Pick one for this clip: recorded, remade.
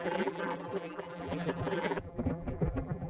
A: remade